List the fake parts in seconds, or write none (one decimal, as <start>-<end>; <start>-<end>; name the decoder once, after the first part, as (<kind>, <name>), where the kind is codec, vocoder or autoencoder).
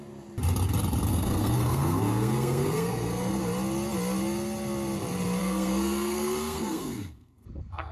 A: 1.1-3.4 (codec, SNAC); 5.4-7.9